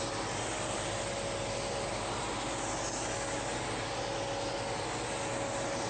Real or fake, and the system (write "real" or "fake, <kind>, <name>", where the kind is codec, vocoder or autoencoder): real